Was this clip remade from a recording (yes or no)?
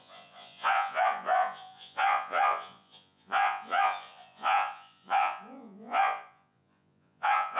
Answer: yes